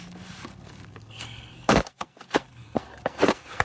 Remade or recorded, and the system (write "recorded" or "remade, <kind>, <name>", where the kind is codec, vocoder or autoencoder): remade, codec, SNAC